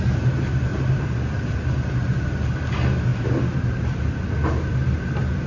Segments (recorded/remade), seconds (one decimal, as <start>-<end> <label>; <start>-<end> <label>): 0.0-0.7 recorded; 0.7-1.5 remade; 1.5-5.5 recorded